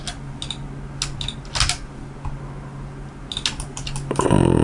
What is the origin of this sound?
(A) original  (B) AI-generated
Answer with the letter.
A